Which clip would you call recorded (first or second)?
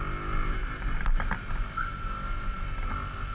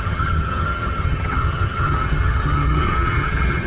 first